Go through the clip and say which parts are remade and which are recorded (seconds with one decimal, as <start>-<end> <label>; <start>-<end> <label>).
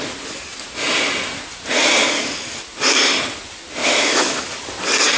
0.0-3.8 recorded; 3.8-4.4 remade; 4.4-5.2 recorded